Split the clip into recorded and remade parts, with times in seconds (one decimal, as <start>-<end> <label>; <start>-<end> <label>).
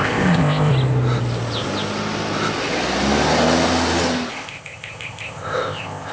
0.0-0.7 remade; 0.7-4.3 recorded; 4.3-6.1 remade